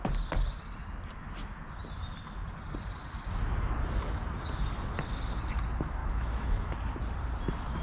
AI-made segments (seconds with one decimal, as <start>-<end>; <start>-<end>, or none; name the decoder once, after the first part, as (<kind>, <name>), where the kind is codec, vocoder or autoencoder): 6.0-6.7 (autoencoder, DAC-VAE)